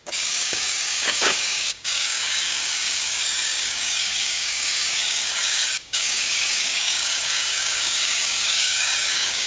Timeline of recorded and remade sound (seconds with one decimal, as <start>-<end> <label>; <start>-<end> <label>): 0.0-9.5 remade